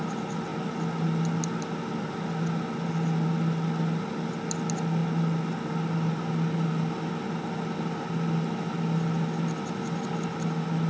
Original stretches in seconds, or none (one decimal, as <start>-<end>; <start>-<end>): 0.0-10.9